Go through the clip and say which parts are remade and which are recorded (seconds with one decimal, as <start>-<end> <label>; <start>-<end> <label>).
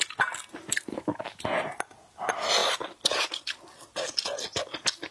0.0-0.9 recorded; 0.9-1.4 remade; 1.4-5.1 recorded